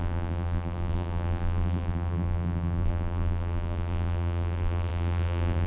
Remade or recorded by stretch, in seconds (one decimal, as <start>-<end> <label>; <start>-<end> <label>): 0.0-5.7 remade